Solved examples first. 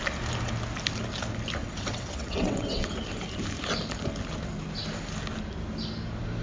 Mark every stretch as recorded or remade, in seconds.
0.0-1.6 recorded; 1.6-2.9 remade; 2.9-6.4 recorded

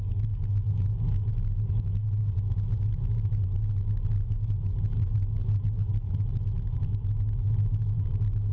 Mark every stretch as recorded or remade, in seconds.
0.0-8.5 recorded

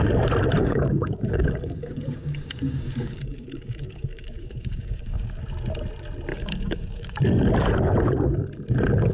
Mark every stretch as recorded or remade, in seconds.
0.0-0.6 recorded; 0.6-5.4 remade; 5.4-6.3 recorded; 6.3-7.2 remade; 7.2-9.1 recorded

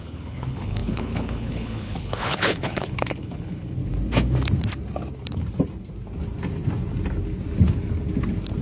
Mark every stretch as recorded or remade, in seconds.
0.0-3.8 remade; 3.8-8.6 recorded

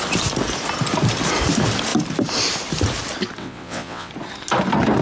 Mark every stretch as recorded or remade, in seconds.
0.0-3.4 recorded; 3.4-4.1 remade; 4.1-5.0 recorded

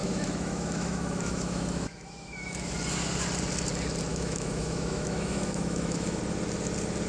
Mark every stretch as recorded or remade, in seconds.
0.0-2.7 remade; 2.7-4.1 recorded; 4.1-6.2 remade; 6.2-7.1 recorded